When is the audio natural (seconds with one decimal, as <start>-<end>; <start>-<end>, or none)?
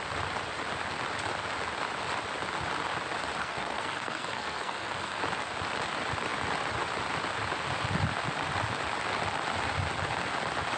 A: 0.0-3.4; 5.2-10.8